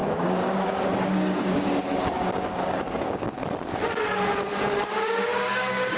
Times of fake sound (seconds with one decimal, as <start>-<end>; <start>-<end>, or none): 0.0-3.4; 4.9-6.0